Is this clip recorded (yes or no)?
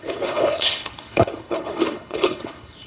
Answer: no